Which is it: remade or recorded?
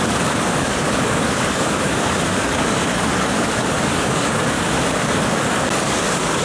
remade